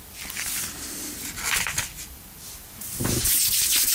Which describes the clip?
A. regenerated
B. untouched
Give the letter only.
B